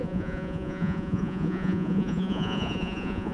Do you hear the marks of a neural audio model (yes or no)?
yes